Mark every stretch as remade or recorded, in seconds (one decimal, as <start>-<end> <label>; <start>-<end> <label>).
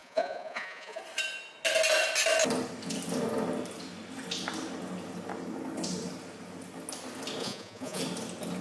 0.0-1.0 remade; 1.0-7.4 recorded; 7.4-8.0 remade; 8.0-8.6 recorded